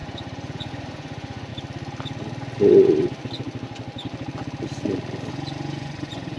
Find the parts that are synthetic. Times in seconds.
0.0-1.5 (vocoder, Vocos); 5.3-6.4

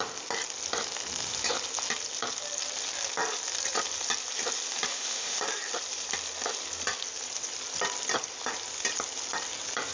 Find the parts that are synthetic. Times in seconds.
4.9-5.4 (autoencoder, DAC-VAE)